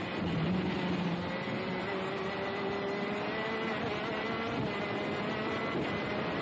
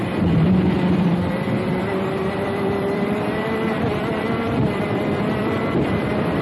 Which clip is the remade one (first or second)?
second